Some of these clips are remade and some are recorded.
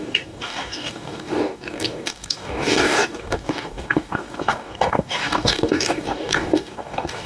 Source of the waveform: remade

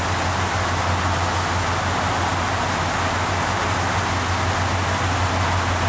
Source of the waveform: recorded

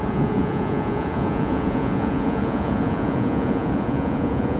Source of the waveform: remade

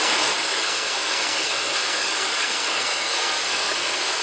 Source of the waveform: remade